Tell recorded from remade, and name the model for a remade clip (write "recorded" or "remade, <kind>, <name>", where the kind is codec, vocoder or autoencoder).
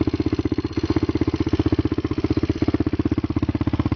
recorded